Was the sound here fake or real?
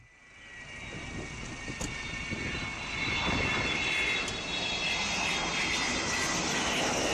real